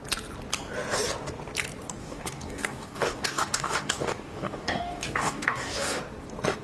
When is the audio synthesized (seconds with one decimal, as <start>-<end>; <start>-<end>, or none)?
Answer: 2.0-6.0